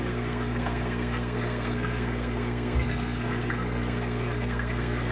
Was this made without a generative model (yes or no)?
no